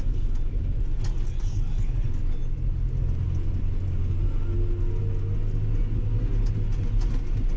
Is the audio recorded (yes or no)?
yes